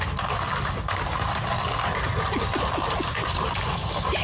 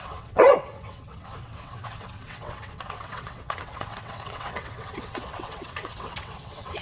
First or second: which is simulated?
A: second